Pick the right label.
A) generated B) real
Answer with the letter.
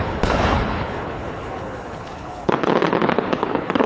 A